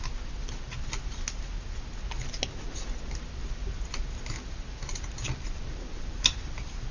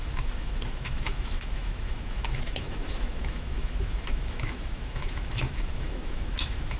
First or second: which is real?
first